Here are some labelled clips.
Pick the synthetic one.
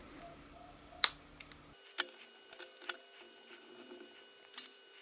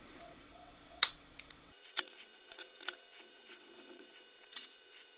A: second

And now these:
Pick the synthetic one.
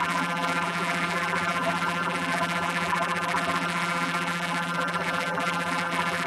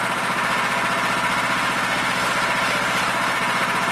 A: first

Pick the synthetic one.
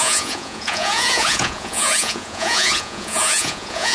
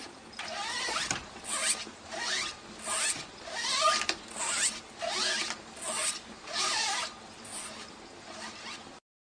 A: first